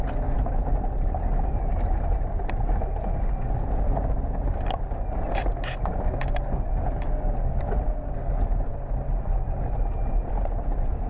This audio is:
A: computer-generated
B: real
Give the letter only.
B